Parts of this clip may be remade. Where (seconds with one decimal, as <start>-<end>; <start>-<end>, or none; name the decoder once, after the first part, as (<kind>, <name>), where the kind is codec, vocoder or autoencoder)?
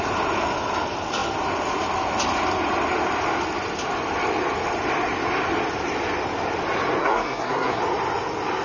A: 7.0-7.8 (codec, SNAC)